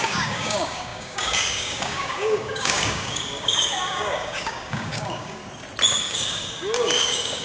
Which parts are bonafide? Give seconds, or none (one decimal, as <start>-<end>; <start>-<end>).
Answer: 5.4-6.0